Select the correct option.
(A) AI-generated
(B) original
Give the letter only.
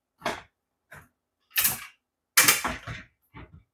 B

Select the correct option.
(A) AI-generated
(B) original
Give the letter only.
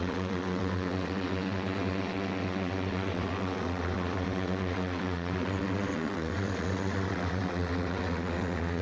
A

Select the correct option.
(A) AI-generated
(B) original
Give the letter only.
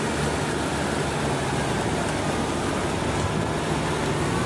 B